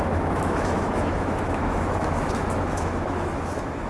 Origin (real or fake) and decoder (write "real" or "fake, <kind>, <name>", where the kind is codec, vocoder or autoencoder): fake, autoencoder, DAC-VAE